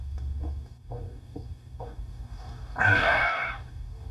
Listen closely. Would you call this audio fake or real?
fake